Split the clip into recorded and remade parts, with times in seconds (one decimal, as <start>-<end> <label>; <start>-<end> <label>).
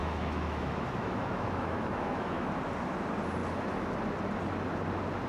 0.0-2.5 remade; 2.5-5.3 recorded